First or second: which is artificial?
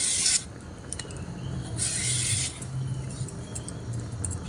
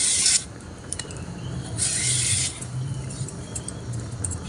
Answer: second